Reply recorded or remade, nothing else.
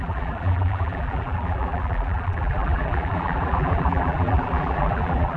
remade